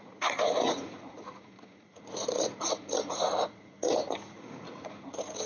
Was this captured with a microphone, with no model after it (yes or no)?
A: no